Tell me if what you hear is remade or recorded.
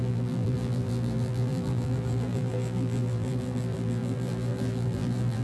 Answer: remade